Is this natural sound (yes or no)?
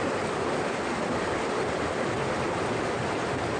yes